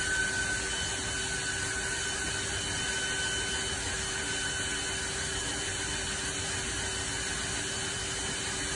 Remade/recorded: recorded